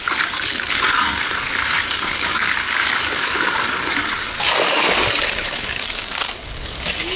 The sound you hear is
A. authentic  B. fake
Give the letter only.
B